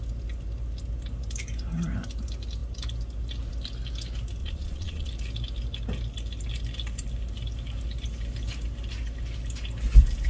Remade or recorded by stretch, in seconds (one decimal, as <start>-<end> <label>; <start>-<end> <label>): 0.0-4.4 recorded; 4.4-5.1 remade; 5.1-10.3 recorded